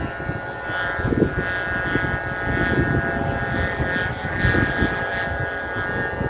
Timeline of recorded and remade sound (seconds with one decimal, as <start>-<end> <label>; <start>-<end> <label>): 0.0-6.3 recorded